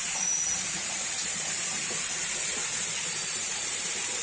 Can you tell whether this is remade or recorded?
remade